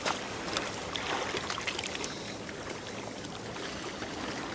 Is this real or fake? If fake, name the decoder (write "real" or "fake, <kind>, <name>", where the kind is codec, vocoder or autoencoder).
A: real